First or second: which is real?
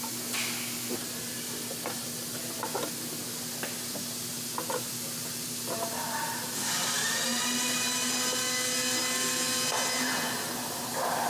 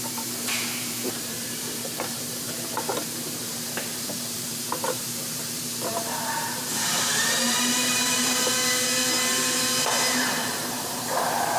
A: first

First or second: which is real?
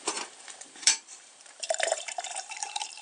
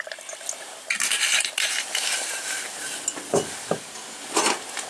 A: second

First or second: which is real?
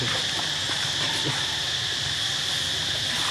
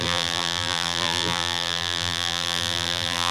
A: first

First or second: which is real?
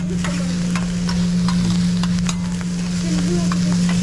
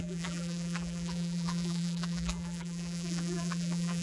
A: first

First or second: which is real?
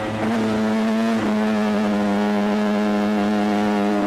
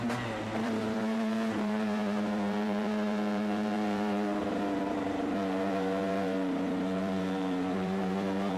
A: first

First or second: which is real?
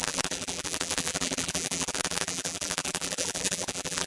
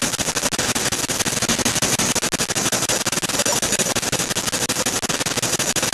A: second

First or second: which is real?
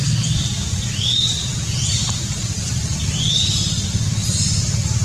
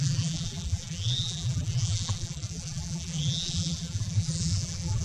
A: first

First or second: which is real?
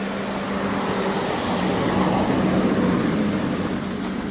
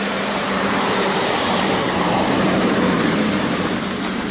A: first